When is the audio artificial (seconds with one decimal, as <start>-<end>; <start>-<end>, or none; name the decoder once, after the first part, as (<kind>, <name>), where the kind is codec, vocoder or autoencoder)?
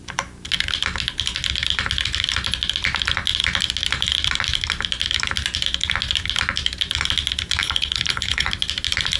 7.6-8.5 (codec, HILCodec)